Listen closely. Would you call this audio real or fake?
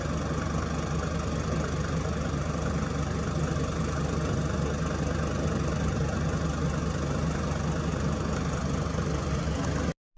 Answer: real